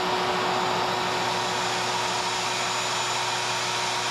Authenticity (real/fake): real